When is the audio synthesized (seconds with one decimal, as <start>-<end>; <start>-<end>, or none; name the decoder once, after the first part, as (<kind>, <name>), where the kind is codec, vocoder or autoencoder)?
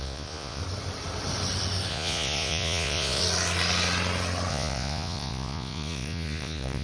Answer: 0.0-0.6 (vocoder, Vocos); 1.9-3.2; 4.5-6.8